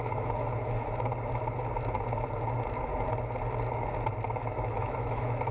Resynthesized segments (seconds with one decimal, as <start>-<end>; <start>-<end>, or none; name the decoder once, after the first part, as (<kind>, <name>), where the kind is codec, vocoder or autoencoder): 0.0-1.1 (autoencoder, DAC-VAE); 4.4-5.5